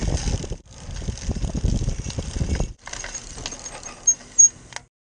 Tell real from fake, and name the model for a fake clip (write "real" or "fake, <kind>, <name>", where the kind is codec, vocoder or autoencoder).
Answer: real